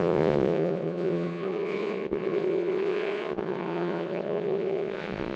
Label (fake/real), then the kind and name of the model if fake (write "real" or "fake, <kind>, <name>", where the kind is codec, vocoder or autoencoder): fake, vocoder, Vocos